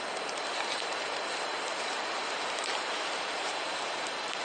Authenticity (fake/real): fake